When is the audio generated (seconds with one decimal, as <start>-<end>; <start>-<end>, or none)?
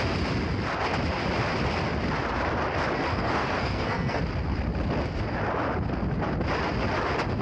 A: 3.1-4.2